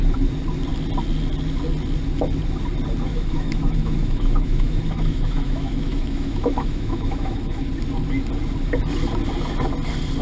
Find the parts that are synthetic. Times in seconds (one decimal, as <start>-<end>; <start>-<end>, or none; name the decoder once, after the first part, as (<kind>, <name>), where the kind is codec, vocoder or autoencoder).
3.1-7.7 (autoencoder, DAC-VAE)